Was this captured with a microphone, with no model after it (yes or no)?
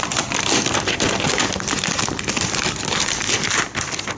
no